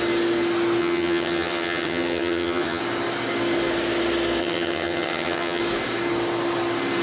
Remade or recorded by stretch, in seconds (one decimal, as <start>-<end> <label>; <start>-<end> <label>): 0.0-0.8 recorded; 0.8-2.8 remade; 2.8-4.4 recorded; 4.4-5.6 remade; 5.6-7.0 recorded